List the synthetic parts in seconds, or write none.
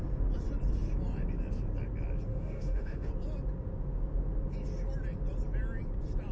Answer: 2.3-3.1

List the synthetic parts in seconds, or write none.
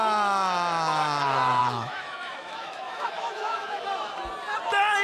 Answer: 1.6-3.8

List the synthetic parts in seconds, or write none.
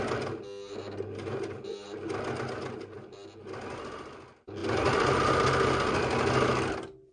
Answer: none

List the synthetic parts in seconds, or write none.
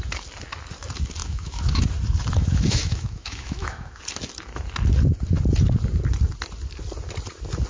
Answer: 1.2-1.8; 2.4-4.0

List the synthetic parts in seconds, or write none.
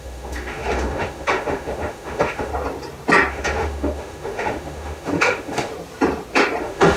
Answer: 0.0-2.5; 3.3-5.7; 6.6-7.0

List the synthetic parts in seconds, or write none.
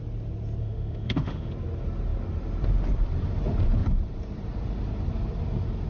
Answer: 0.6-1.5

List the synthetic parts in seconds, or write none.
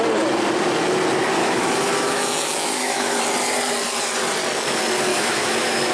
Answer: 1.4-3.2; 5.1-5.9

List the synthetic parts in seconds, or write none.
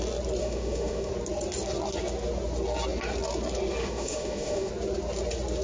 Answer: 0.4-1.1; 3.8-4.7